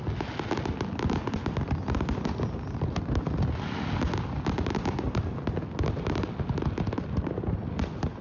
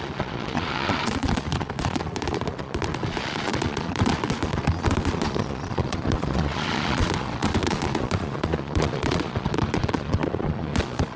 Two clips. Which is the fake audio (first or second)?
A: second